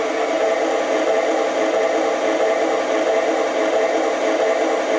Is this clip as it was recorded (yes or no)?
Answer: yes